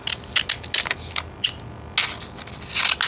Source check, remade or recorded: recorded